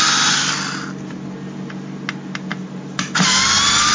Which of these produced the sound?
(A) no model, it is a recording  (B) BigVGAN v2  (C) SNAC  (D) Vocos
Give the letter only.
A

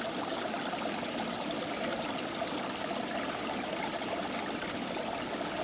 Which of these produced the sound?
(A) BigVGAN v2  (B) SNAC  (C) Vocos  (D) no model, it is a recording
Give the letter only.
D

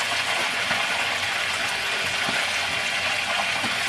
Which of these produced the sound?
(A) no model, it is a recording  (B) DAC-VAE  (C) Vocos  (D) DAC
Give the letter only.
C